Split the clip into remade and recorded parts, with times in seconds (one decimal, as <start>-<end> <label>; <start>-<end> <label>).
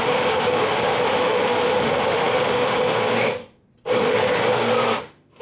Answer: 0.0-2.9 remade; 2.9-4.0 recorded; 4.0-4.4 remade; 4.4-5.0 recorded; 5.0-5.4 remade